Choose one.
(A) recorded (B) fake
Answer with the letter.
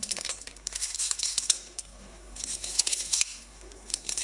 B